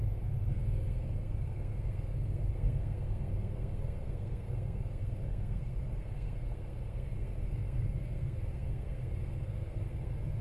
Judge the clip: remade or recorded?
remade